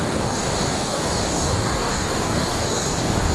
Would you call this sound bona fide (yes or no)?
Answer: no